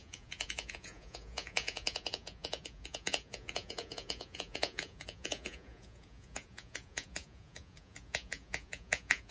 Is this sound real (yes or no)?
no